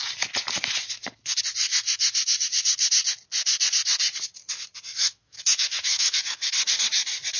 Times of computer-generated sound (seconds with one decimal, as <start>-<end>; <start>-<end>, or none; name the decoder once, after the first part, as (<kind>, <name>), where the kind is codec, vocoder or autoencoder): 4.9-6.5 (autoencoder, DAC-VAE)